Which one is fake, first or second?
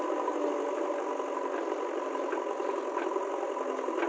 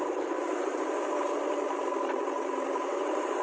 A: second